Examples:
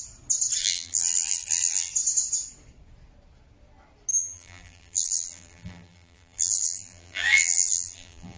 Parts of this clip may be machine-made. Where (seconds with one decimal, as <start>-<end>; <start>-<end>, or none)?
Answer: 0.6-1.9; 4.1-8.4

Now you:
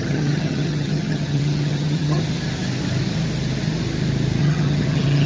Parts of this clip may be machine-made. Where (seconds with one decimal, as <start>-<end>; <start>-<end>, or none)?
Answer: 0.0-2.2; 4.4-5.3

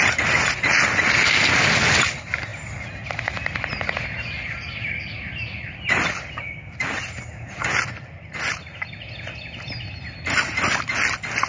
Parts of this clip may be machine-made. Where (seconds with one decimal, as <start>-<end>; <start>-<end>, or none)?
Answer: none

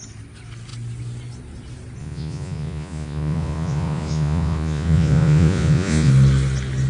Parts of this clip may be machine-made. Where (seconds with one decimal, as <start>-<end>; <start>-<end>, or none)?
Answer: 2.0-6.1